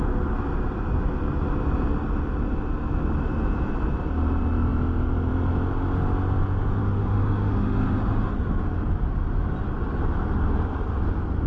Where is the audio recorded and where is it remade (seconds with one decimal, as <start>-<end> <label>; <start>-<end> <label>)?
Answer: 0.0-6.8 recorded; 6.8-8.3 remade; 8.3-11.5 recorded